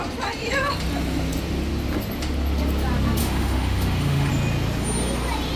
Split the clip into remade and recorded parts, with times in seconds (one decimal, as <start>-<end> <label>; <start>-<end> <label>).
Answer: 0.0-3.2 recorded; 3.2-4.3 remade; 4.3-5.6 recorded